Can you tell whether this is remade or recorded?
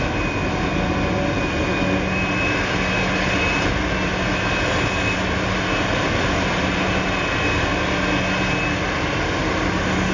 recorded